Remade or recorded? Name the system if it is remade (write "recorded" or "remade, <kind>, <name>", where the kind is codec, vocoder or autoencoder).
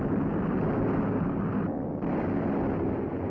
recorded